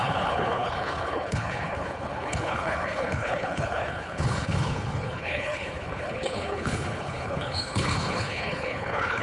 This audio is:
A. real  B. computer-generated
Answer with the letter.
B